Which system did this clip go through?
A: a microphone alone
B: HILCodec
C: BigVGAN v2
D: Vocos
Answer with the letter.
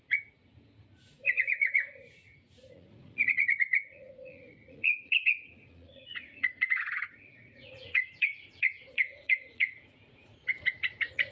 D